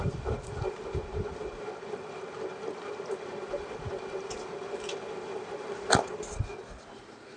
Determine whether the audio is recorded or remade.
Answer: recorded